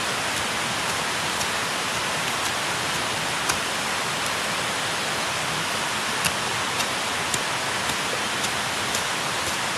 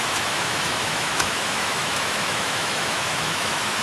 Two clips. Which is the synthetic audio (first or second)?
second